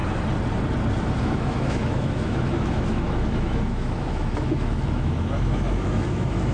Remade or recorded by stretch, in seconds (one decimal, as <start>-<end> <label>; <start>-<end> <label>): 0.0-1.2 recorded; 1.2-6.5 remade